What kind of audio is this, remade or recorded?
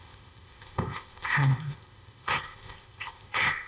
remade